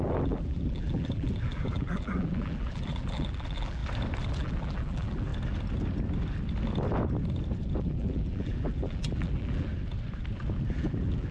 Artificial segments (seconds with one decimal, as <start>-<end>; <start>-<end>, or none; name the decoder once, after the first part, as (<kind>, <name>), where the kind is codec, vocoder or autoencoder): 0.0-3.8 (vocoder, BigVGAN v2); 4.3-5.3; 7.8-9.7; 10.7-11.3